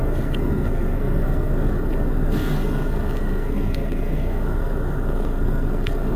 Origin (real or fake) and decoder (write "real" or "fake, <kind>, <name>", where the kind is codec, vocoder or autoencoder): fake, codec, SNAC